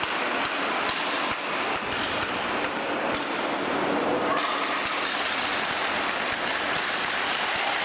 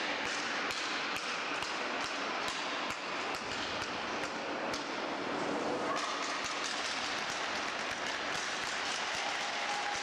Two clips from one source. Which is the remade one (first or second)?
first